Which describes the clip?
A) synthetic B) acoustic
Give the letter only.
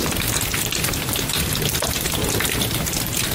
A